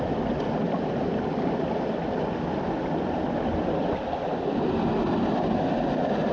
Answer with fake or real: real